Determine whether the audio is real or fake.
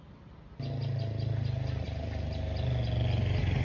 real